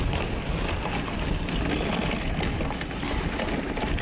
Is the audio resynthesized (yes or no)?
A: no